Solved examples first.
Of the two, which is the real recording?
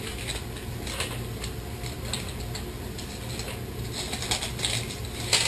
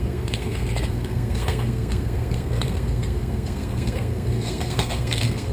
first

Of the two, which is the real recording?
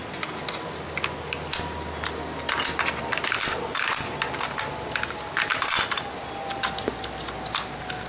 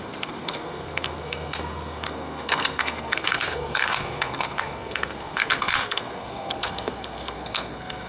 first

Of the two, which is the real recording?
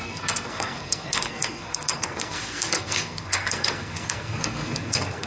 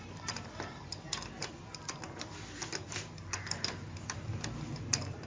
second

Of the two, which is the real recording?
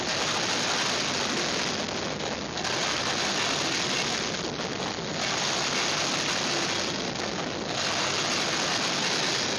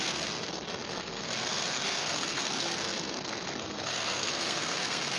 first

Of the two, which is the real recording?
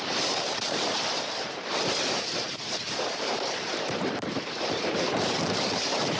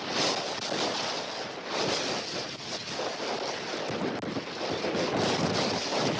second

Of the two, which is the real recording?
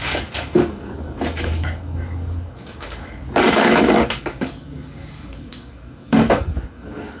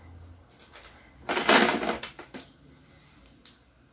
second